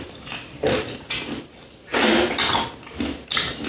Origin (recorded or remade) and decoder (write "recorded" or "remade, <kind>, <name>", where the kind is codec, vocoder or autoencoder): recorded